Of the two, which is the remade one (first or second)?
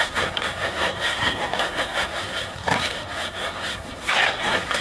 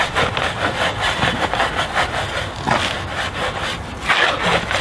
first